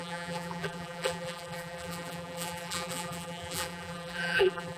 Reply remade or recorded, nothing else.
remade